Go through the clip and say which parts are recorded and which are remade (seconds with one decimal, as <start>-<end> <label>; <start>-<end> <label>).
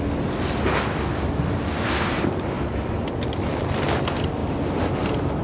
0.0-5.4 recorded